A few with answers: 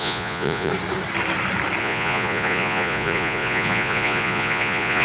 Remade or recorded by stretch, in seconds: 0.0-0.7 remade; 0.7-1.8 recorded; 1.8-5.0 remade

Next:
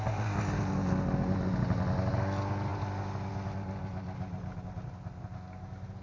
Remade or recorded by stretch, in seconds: 0.0-6.0 recorded

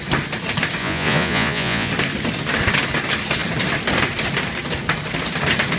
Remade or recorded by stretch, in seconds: 0.0-0.8 recorded; 0.8-1.9 remade; 1.9-5.8 recorded

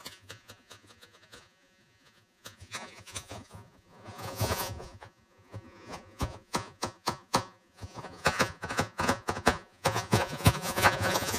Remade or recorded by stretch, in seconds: 0.0-11.4 remade

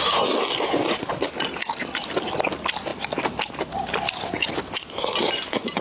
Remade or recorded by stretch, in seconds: 0.0-5.8 recorded